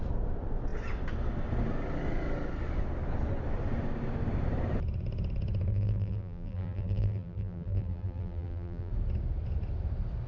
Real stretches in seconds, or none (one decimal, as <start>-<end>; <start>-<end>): 0.0-5.7; 8.9-10.3